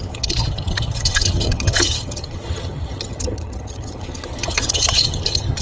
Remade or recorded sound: remade